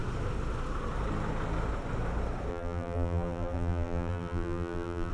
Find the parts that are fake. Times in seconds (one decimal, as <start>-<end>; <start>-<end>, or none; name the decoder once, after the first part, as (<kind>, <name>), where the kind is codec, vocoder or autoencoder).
2.5-5.1 (vocoder, BigVGAN v2)